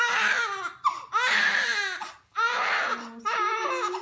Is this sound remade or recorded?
recorded